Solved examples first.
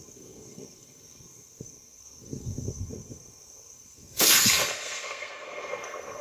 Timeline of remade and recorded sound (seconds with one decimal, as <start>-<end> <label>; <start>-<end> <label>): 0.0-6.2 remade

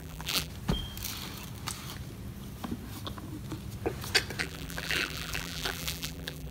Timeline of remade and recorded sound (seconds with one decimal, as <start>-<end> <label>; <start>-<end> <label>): 0.0-0.5 remade; 0.5-4.4 recorded; 4.4-6.5 remade

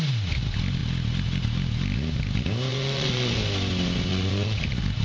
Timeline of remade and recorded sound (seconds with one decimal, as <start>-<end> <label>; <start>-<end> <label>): 0.0-2.7 recorded; 2.7-3.4 remade; 3.4-4.1 recorded; 4.1-4.6 remade; 4.6-5.0 recorded

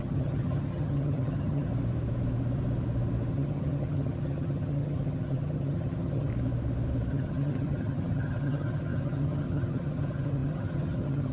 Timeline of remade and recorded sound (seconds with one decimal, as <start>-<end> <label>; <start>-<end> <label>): 0.0-1.7 remade; 1.7-3.3 recorded; 3.3-6.3 remade; 6.3-7.1 recorded; 7.1-11.3 remade

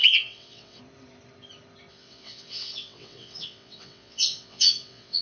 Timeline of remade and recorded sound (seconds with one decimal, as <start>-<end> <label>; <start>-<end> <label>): 0.0-0.8 remade; 0.8-1.9 recorded; 1.9-5.2 remade

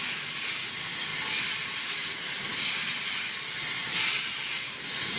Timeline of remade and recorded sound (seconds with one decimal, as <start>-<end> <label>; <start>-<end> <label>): 0.0-5.2 recorded

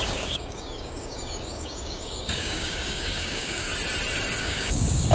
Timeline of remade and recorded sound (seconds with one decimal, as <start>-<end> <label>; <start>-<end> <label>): 0.0-3.7 remade; 3.7-4.4 recorded; 4.4-5.1 remade